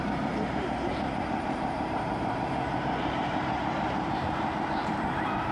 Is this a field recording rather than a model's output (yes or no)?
no